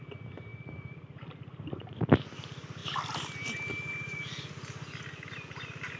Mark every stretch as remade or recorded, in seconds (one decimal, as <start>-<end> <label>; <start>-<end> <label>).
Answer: 0.0-6.0 recorded